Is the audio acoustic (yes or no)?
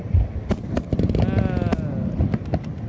yes